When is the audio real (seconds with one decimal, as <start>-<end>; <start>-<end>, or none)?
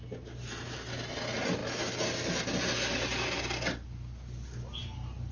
0.0-5.3